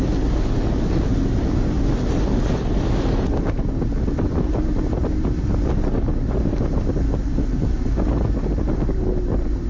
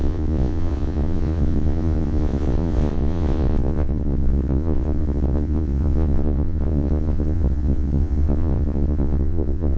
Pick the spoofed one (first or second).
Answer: second